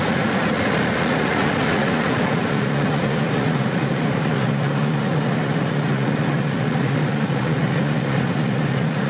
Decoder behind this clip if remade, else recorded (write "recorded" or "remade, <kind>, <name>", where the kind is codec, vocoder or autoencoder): remade, vocoder, Vocos